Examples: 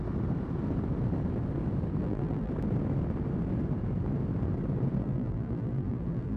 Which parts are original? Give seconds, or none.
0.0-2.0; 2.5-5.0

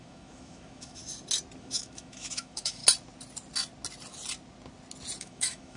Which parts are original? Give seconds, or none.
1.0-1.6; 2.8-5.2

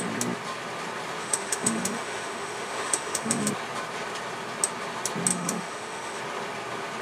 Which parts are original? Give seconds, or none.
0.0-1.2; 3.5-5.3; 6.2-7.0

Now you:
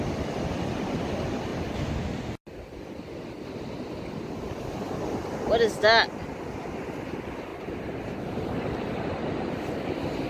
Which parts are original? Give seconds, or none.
0.0-7.5; 9.7-10.3

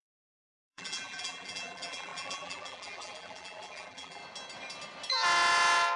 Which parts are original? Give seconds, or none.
4.2-6.0

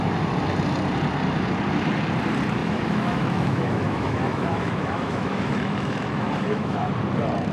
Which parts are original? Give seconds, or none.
0.0-2.6; 6.9-7.5